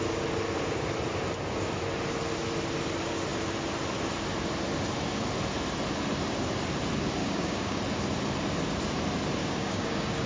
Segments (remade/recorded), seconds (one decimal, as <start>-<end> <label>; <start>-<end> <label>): 0.0-7.2 recorded; 7.2-7.8 remade; 7.8-9.4 recorded; 9.4-10.3 remade